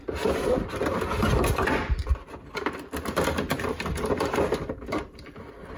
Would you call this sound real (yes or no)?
no